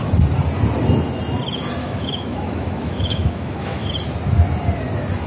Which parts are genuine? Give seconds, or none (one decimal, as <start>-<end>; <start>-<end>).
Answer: 0.0-1.8; 3.9-5.3